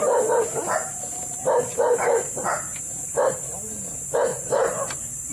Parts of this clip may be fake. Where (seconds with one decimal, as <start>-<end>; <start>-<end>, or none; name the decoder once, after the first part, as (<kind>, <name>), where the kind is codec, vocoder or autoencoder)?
3.0-3.7 (vocoder, BigVGAN v2); 4.3-5.3